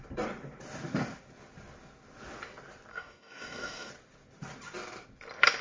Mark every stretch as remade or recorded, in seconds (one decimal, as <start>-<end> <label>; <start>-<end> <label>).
0.0-2.9 recorded; 2.9-3.9 remade; 3.9-5.6 recorded